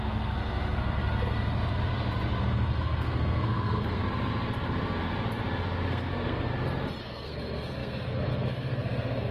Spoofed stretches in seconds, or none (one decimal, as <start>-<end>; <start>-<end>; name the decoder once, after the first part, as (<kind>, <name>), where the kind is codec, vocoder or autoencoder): 0.0-1.0 (codec, SNAC); 2.4-4.0; 5.9-6.5; 7.0-9.3